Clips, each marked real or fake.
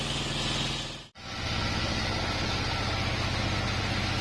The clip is real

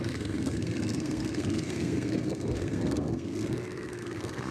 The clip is fake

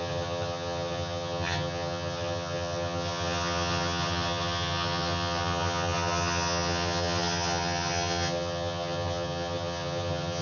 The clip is fake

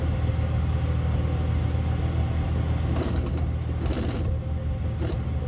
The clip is real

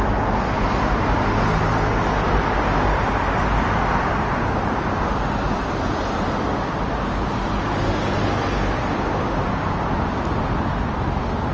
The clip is real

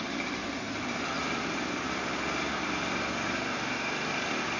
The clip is fake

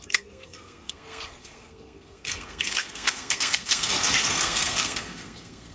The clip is fake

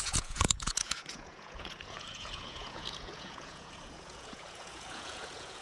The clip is fake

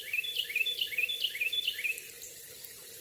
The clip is fake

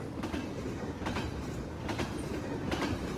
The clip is real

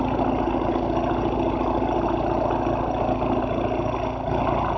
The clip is real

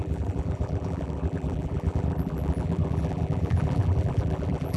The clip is fake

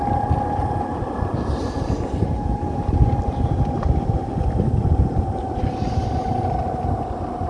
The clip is real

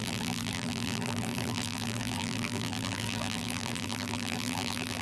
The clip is fake